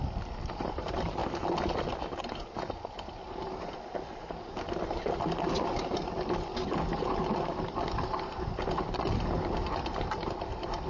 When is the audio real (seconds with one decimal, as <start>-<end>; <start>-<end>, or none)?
0.0-10.9